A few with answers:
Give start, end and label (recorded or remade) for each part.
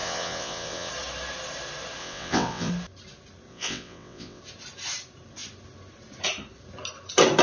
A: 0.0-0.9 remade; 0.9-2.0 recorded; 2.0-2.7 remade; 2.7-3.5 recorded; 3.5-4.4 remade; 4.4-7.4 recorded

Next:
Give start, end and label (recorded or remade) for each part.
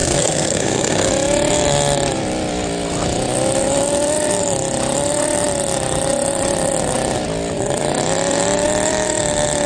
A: 0.0-1.1 remade; 1.1-9.7 recorded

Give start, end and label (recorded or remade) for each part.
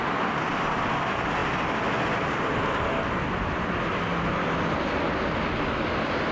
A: 0.0-6.3 recorded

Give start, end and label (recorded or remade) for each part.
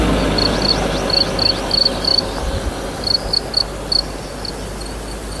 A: 0.0-5.4 recorded